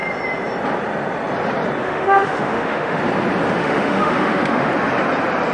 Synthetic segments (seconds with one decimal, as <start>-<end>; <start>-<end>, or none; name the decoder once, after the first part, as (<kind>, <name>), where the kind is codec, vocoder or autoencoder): 1.8-3.0 (autoencoder, DAC-VAE); 3.6-4.7